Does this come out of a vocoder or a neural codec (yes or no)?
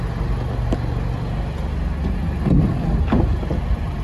no